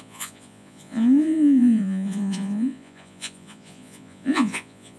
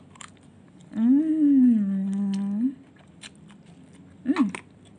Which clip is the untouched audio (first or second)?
second